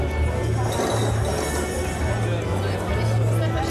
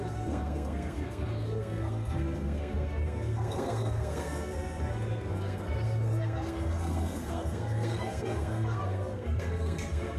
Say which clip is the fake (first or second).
second